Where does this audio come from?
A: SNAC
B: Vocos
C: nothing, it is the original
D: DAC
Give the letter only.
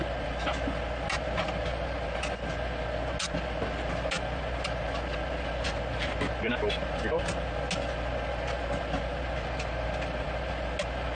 C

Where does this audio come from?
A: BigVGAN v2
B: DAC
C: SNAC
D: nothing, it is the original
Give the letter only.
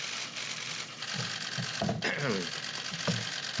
D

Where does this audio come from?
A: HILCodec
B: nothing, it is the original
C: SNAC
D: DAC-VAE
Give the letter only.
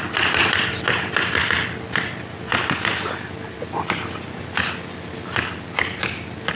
B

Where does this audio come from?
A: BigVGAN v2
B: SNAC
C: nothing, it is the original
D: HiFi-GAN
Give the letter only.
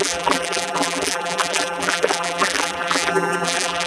A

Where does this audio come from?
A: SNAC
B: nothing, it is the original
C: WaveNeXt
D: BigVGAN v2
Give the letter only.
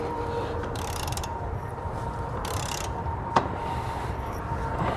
D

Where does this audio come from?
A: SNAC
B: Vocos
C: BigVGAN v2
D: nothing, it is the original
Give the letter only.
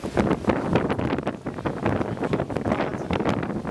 D